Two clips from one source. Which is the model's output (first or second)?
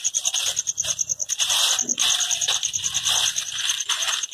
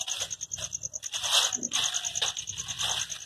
first